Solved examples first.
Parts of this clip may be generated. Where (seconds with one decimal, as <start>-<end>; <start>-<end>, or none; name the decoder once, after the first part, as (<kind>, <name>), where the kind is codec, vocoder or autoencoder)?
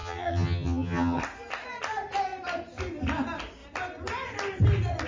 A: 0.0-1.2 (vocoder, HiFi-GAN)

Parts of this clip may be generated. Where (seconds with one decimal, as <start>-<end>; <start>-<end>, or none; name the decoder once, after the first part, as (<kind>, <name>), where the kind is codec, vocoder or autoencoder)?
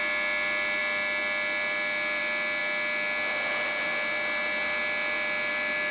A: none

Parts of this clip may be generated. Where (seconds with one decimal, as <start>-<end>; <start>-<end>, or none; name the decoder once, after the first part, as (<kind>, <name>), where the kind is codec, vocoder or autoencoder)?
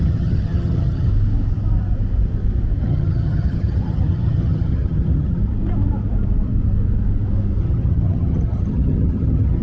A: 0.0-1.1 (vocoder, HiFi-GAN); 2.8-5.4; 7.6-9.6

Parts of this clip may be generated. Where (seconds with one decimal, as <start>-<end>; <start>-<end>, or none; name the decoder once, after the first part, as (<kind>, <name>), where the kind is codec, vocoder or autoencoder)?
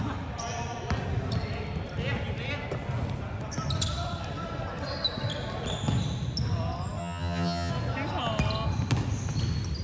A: 7.0-7.7 (vocoder, HiFi-GAN)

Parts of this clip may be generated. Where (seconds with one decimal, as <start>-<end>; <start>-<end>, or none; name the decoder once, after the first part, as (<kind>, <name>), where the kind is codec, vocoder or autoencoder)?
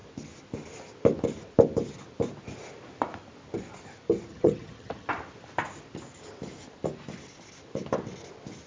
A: 4.3-5.1 (vocoder, HiFi-GAN)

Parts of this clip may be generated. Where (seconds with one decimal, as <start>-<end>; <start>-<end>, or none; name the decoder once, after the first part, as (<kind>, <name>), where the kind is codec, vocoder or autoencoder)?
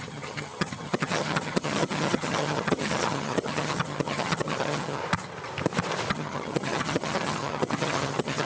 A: 0.0-5.0 (vocoder, HiFi-GAN); 6.1-8.5